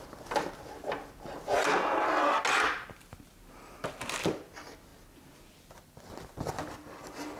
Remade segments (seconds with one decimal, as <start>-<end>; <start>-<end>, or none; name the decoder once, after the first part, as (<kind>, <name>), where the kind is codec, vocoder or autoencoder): none